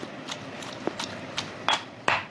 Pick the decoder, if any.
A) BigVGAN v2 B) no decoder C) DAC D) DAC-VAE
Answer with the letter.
A